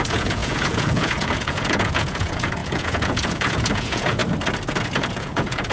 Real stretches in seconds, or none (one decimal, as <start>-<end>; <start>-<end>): 4.2-4.9